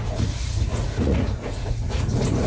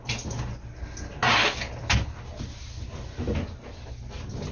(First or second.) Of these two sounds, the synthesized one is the first